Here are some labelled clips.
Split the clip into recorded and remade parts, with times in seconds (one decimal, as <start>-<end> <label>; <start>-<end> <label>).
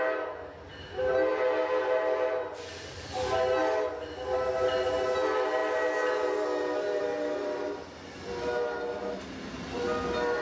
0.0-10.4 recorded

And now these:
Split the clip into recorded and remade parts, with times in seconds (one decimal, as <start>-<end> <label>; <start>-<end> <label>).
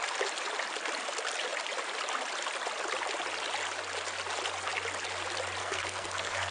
0.0-5.6 recorded; 5.6-6.5 remade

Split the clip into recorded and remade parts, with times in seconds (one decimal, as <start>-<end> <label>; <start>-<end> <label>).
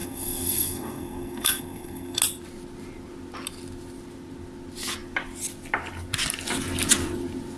0.0-2.2 remade; 2.2-7.6 recorded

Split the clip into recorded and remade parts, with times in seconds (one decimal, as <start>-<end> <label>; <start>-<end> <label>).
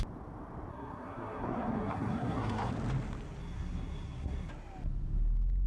0.0-0.7 recorded; 0.7-2.7 remade; 2.7-3.4 recorded; 3.4-4.5 remade; 4.5-5.7 recorded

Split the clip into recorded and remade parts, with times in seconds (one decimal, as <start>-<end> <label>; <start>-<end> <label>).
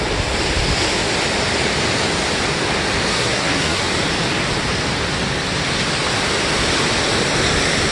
0.0-3.1 recorded; 3.1-3.8 remade; 3.8-7.9 recorded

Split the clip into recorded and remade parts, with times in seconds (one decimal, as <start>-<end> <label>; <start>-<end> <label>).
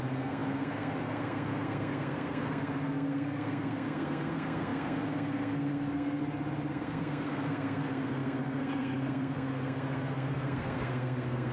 0.0-6.2 remade; 6.2-6.7 recorded; 6.7-11.5 remade